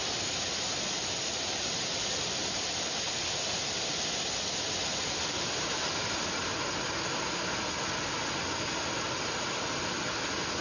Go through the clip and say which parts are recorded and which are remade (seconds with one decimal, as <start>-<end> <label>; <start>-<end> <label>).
0.0-10.6 recorded